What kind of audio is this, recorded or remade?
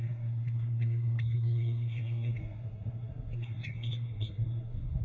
remade